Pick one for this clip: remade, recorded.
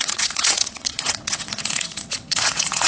remade